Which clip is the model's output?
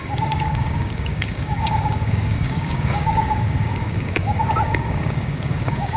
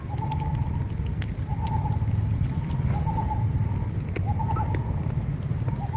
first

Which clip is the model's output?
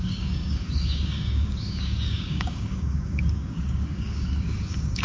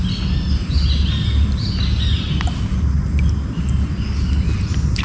first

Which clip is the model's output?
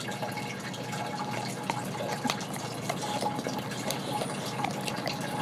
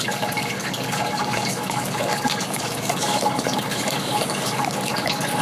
second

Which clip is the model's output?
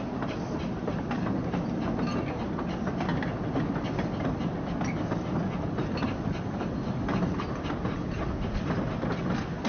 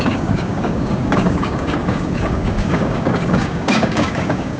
second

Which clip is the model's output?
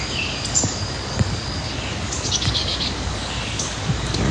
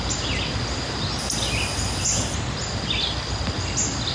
first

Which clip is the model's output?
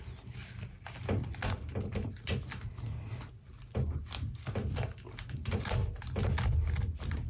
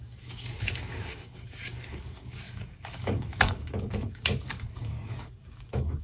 second